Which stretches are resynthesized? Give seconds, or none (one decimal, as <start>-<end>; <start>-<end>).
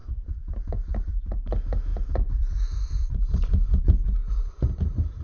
0.0-1.1; 1.9-3.8